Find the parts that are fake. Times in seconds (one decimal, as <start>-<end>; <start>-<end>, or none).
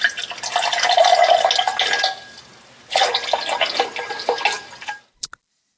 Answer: none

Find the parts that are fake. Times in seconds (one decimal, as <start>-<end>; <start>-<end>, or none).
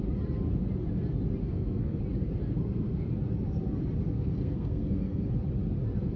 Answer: 1.4-2.0; 2.6-3.1; 4.1-5.3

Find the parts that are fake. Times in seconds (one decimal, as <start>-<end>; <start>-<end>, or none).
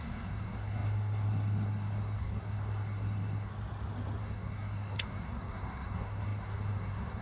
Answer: 0.0-3.5; 4.2-7.2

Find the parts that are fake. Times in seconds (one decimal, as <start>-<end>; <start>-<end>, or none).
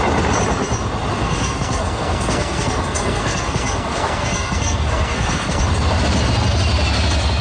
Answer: 1.2-5.6